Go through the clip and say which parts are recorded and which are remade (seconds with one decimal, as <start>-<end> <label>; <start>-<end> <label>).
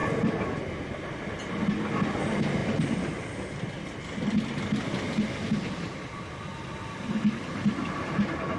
0.0-8.6 recorded